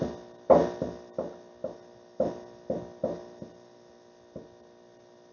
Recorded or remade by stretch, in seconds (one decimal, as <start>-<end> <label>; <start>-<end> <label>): 0.0-5.3 recorded